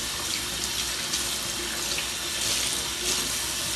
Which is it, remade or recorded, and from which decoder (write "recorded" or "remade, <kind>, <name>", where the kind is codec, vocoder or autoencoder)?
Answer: recorded